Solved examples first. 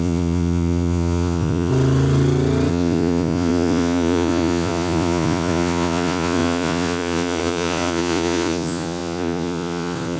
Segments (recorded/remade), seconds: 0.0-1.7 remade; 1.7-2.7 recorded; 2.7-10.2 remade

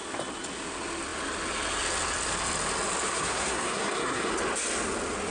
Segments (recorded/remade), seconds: 0.0-3.1 recorded; 3.1-4.3 remade; 4.3-5.3 recorded

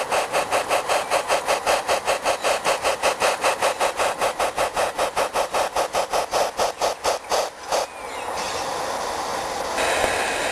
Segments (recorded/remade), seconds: 0.0-10.5 recorded

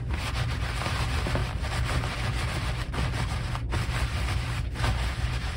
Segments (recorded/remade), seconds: 0.0-1.4 recorded; 1.4-2.9 remade; 2.9-5.6 recorded

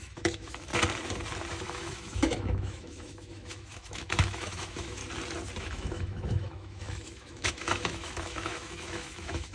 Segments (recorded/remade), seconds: 0.0-0.7 remade; 0.7-1.5 recorded; 1.5-5.0 remade; 5.0-5.6 recorded; 5.6-9.5 remade

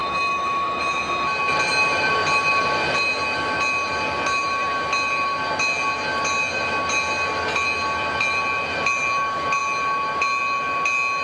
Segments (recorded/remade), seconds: 0.0-0.8 remade; 0.8-11.2 recorded